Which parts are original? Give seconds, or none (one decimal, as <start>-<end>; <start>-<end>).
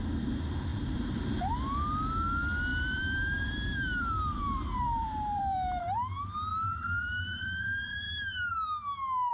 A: 0.0-0.7; 1.3-2.7; 5.8-6.5